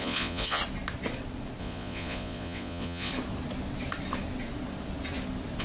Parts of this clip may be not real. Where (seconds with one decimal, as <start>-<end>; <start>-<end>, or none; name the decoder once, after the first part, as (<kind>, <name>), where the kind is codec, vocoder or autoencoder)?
0.0-0.6 (vocoder, Vocos); 1.6-3.1